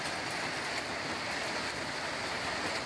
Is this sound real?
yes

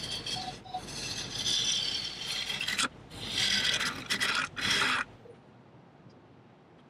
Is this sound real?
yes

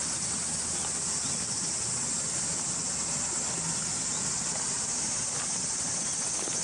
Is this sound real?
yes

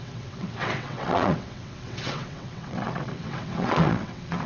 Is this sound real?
no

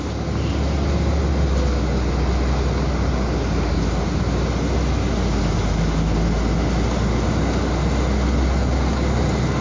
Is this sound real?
yes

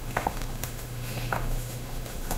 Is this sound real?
no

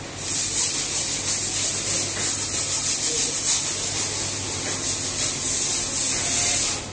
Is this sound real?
yes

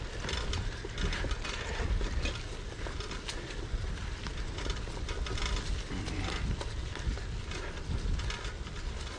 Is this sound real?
yes